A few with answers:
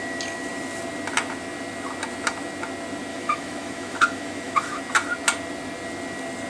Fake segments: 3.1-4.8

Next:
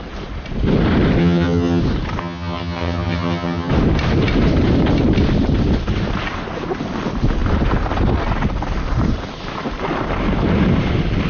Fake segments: 1.2-1.8; 2.2-3.7

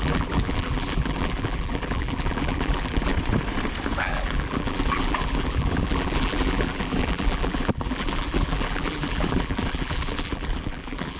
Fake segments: 0.0-3.1; 4.0-11.2

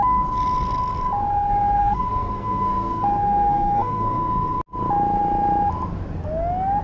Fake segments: 1.8-4.6

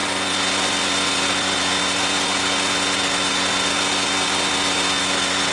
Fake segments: none

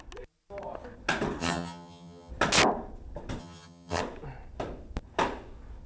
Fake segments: 1.4-2.3; 3.4-4.0